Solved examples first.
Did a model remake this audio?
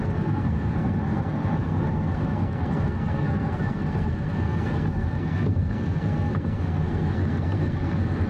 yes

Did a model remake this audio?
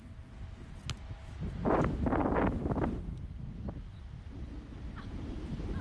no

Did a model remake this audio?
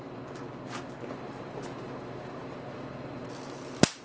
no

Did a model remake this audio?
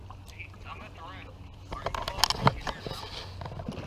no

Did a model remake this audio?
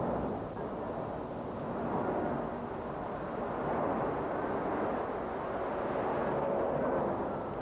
no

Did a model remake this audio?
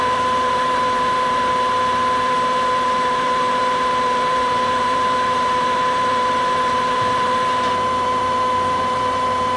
yes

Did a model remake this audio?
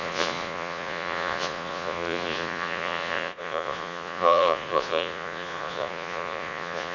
yes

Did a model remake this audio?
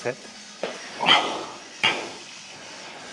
yes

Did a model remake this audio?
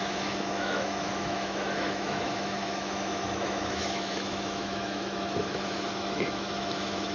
yes